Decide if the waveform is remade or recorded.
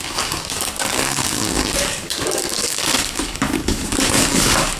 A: remade